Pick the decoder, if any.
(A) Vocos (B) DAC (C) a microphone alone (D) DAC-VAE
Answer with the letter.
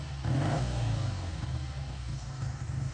B